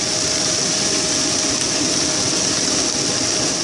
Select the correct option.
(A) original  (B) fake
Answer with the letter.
A